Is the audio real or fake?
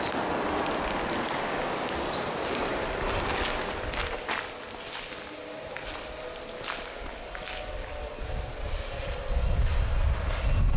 real